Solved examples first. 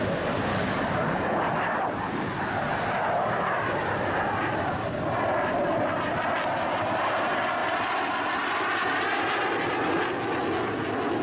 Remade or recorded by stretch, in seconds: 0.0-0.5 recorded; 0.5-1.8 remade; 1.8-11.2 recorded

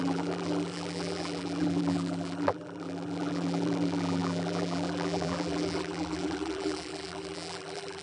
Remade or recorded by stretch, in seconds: 0.0-8.0 remade